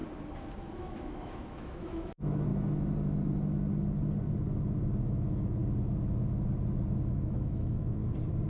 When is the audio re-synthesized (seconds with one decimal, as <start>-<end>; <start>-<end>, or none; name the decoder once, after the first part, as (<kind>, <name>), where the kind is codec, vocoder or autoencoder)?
0.6-2.5 (autoencoder, DAC-VAE); 5.0-5.6; 7.1-8.0